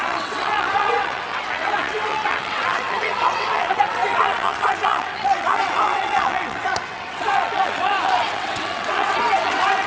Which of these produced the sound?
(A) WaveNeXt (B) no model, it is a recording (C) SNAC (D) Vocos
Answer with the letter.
A